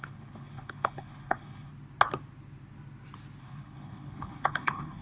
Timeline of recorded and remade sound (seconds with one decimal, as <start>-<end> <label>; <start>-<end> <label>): 0.0-1.7 remade; 1.7-3.4 recorded; 3.4-5.0 remade